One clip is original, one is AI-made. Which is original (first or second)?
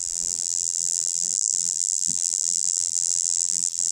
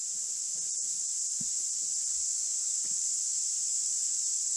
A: second